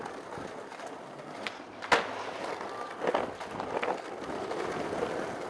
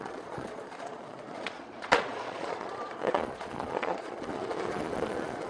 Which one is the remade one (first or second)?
second